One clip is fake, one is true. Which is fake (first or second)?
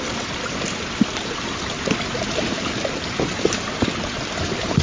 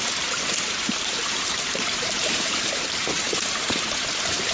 second